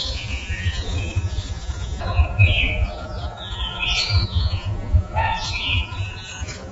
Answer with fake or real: fake